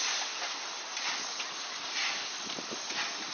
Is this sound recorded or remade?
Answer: recorded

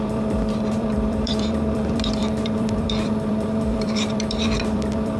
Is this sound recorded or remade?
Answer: remade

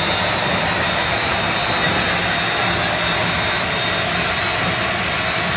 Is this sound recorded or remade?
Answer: recorded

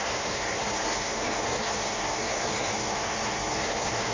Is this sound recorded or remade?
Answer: remade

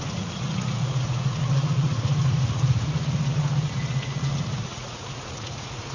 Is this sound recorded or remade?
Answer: remade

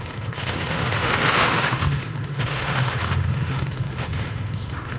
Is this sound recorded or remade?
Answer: remade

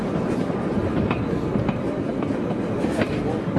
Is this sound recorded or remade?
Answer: recorded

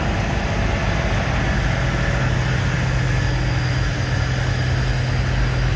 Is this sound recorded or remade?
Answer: recorded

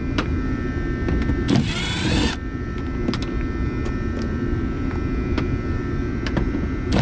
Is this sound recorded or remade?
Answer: recorded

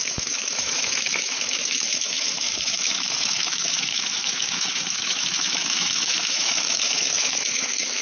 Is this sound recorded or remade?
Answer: remade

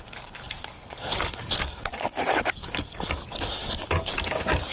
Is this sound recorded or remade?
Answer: remade